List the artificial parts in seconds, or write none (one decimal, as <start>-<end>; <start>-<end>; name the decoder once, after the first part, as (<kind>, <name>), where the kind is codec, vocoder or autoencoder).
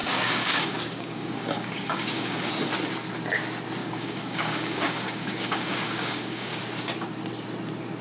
0.0-2.5 (codec, DAC); 3.8-6.6